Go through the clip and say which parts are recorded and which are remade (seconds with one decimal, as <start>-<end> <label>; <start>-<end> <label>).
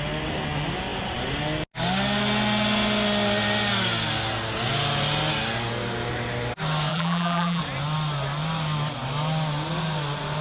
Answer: 0.0-6.9 recorded; 6.9-7.6 remade; 7.6-10.4 recorded